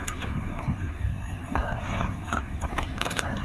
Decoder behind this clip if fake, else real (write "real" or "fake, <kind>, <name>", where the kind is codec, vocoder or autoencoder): fake, codec, SNAC